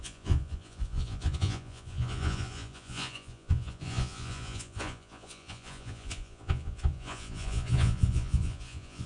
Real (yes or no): no